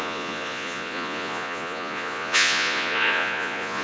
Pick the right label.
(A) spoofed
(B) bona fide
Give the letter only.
A